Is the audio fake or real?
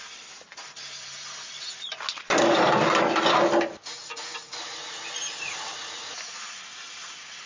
real